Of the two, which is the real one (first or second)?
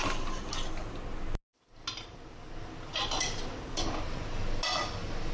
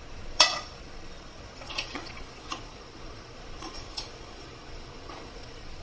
first